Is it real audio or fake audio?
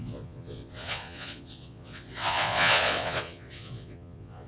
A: fake